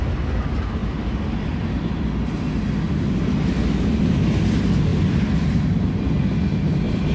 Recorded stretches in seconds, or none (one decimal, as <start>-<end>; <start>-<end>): 0.0-7.1